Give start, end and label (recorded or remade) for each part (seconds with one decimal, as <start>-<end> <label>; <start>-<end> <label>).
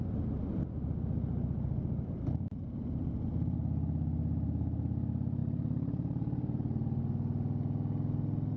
0.0-5.4 recorded; 5.4-7.0 remade; 7.0-8.6 recorded